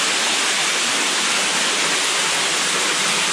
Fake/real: real